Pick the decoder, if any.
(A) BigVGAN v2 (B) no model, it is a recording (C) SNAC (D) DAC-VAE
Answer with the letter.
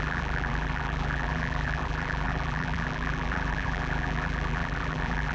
A